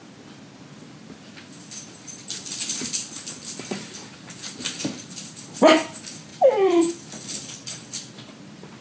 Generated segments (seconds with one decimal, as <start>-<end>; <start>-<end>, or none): 6.3-6.9